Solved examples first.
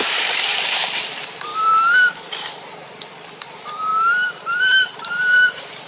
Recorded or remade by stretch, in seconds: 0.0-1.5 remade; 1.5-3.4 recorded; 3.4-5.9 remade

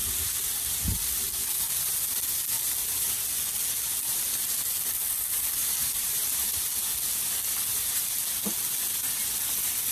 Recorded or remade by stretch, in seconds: 0.0-5.6 recorded; 5.6-6.6 remade; 6.6-7.7 recorded; 7.7-8.2 remade; 8.2-9.9 recorded

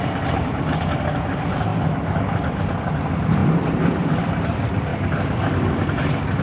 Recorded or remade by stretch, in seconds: 0.0-1.7 remade; 1.7-2.5 recorded; 2.5-3.4 remade; 3.4-4.2 recorded; 4.2-4.9 remade; 4.9-5.7 recorded; 5.7-6.4 remade

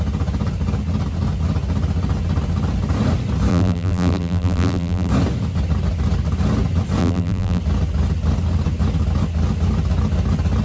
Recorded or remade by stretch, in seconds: 0.0-3.5 recorded; 3.5-5.1 remade; 5.1-7.0 recorded; 7.0-7.6 remade; 7.6-10.6 recorded

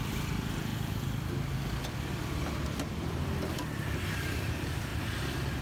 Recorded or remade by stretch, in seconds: 0.0-0.7 remade; 0.7-2.9 recorded; 2.9-4.9 remade; 4.9-5.6 recorded

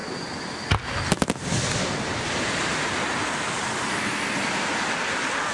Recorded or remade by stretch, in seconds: 0.0-5.5 recorded

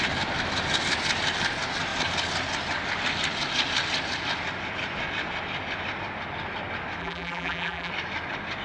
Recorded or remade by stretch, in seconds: 0.0-7.0 recorded; 7.0-7.9 remade; 7.9-8.6 recorded